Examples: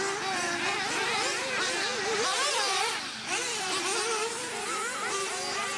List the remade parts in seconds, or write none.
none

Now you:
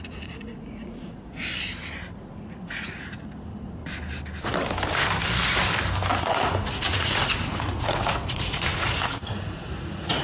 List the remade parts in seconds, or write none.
0.0-1.4 (vocoder, Vocos); 2.4-3.8; 6.2-10.2

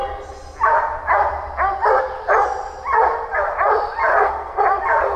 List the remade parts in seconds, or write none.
4.1-4.6 (codec, SNAC)